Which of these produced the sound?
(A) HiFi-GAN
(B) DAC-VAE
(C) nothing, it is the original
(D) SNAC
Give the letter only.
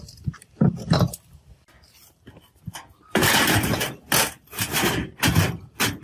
C